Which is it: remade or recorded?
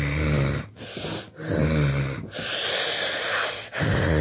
recorded